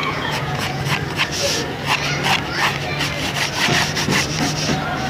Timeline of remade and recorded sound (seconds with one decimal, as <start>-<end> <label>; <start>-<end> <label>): 0.0-0.8 remade; 0.8-5.1 recorded